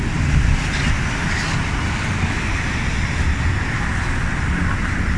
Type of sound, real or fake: real